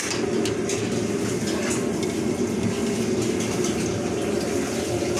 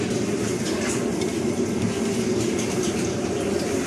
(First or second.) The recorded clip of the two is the first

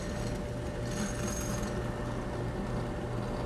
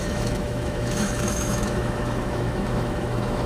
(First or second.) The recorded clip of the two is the first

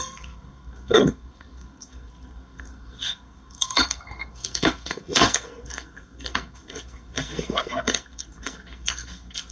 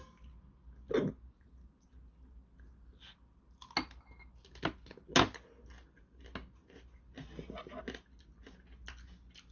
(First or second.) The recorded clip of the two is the second